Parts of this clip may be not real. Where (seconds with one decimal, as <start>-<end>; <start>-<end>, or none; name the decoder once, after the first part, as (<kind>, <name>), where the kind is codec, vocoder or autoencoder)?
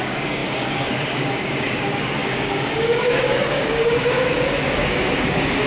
0.0-5.7 (codec, DAC)